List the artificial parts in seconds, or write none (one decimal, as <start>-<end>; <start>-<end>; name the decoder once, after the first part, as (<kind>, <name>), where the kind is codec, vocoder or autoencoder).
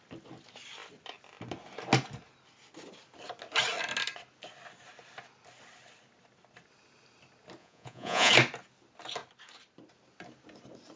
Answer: 7.6-8.3 (vocoder, Vocos)